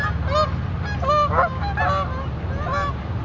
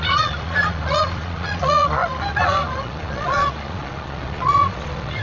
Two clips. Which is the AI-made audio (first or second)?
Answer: second